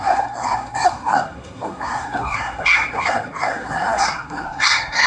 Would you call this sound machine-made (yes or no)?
yes